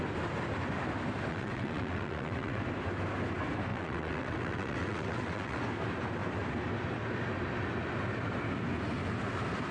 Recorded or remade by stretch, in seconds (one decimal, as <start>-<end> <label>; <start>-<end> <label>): 0.0-1.3 recorded; 1.3-2.6 remade; 2.6-3.7 recorded; 3.7-5.6 remade; 5.6-9.7 recorded